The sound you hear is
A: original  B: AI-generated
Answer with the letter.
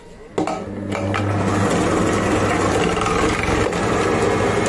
A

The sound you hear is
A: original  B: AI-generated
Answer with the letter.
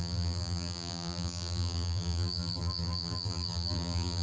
B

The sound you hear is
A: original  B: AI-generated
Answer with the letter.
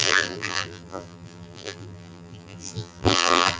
B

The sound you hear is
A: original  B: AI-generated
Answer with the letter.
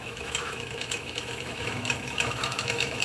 B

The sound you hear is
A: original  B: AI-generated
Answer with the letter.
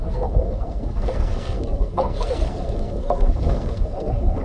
B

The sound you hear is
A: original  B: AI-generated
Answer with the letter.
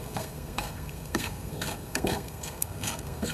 B